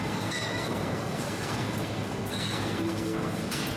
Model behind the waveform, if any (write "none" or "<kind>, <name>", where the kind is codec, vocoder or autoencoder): codec, SNAC